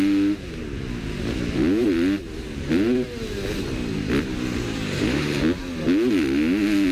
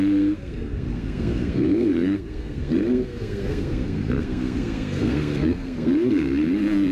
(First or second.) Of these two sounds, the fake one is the second